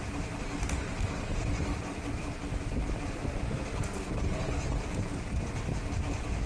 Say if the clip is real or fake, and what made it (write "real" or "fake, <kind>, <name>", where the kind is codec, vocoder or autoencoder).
real